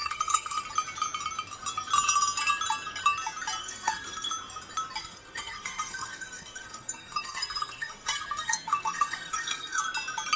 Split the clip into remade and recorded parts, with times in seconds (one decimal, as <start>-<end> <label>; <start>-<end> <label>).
0.0-0.6 remade; 0.6-3.6 recorded; 3.6-4.3 remade; 4.3-5.0 recorded; 5.0-9.8 remade; 9.8-10.4 recorded